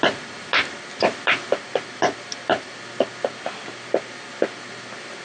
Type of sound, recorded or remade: recorded